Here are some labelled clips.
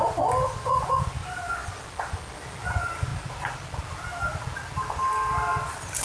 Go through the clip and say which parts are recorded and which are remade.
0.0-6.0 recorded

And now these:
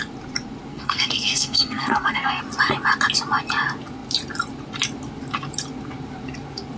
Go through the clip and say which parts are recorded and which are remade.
0.0-0.7 recorded; 0.7-2.4 remade; 2.4-6.8 recorded

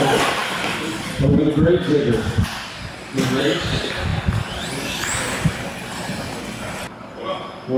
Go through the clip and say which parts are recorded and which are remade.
0.0-7.8 recorded

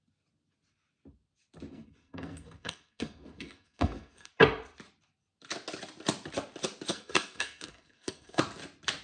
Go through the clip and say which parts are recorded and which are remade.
0.0-1.7 recorded; 1.7-4.3 remade; 4.3-6.9 recorded; 6.9-8.4 remade; 8.4-9.0 recorded